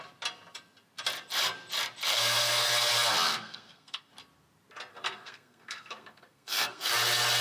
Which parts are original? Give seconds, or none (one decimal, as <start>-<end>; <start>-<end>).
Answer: 0.0-2.1; 2.7-3.3; 4.1-4.9; 6.9-7.4